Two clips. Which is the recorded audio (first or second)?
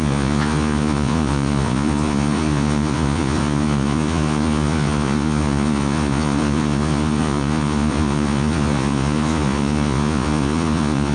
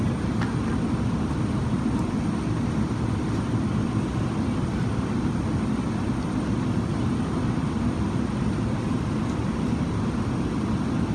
second